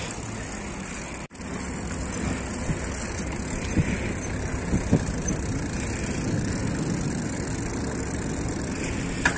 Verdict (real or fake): real